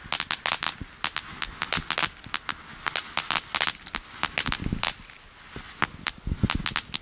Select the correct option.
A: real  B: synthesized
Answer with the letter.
A